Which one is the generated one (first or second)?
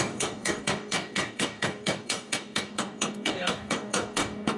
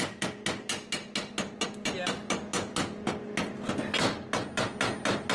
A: first